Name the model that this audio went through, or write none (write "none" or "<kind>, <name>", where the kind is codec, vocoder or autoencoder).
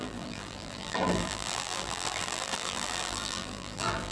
vocoder, BigVGAN v2